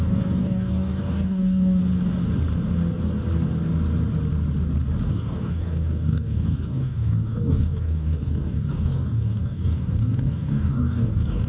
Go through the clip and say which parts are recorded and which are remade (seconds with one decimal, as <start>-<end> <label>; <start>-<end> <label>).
0.0-1.8 remade; 1.8-5.1 recorded; 5.1-11.5 remade